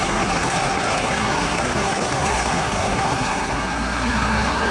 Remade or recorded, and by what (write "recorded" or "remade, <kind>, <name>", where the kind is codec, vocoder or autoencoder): remade, codec, SNAC